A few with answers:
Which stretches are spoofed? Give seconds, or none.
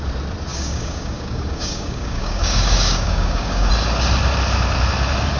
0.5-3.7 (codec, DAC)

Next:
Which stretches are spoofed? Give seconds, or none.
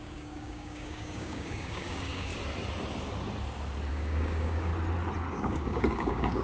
0.0-2.3 (codec, DAC); 3.9-4.7; 5.3-6.4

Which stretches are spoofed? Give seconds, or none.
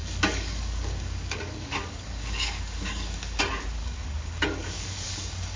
0.0-3.4 (codec, DAC); 3.8-5.6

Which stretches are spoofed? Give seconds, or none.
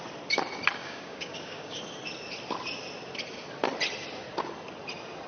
0.8-1.8 (codec, DAC)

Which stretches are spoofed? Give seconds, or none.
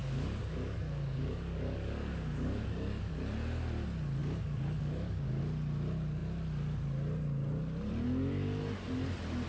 0.0-3.1 (codec, DAC); 4.2-5.4